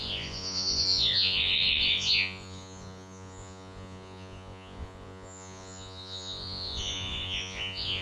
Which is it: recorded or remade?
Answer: remade